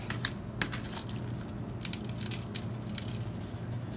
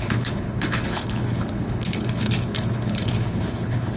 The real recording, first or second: first